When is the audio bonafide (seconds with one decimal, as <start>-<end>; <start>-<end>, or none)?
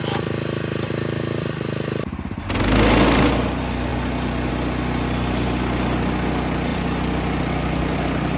0.0-3.9; 4.5-6.7; 7.4-8.4